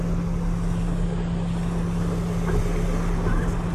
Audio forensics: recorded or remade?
recorded